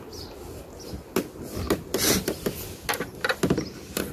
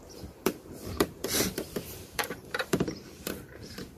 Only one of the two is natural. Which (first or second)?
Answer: first